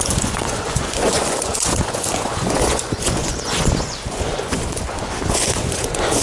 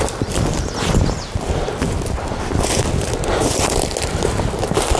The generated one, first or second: first